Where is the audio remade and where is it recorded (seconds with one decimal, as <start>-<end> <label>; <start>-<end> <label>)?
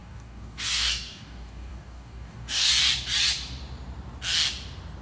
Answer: 0.0-2.7 remade; 2.7-5.0 recorded